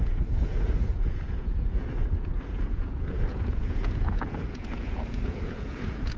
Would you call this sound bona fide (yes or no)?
no